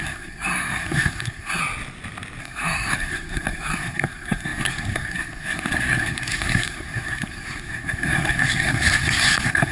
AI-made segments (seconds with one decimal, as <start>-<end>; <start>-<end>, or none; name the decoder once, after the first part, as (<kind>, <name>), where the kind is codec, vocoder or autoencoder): 0.0-1.6 (codec, SNAC); 2.4-9.7